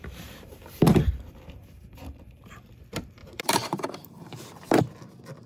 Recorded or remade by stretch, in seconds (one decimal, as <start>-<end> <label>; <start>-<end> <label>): 0.0-2.2 remade; 2.2-3.2 recorded; 3.2-4.8 remade; 4.8-5.5 recorded